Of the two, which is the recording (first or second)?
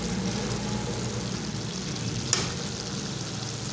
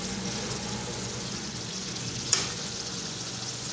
first